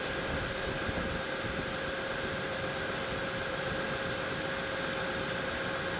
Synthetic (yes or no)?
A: no